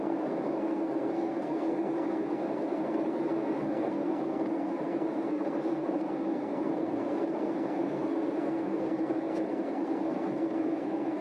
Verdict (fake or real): fake